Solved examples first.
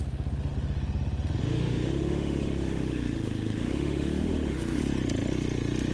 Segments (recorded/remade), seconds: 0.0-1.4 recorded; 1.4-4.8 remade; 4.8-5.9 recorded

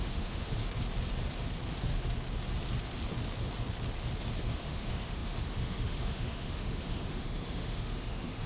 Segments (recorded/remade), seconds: 0.0-0.6 remade; 0.6-4.4 recorded; 4.4-8.5 remade